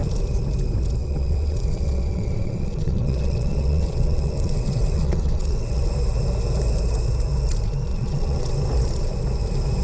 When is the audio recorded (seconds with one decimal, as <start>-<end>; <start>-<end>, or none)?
0.0-1.0; 5.9-7.9; 8.5-9.8